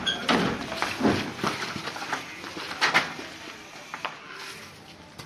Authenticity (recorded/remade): recorded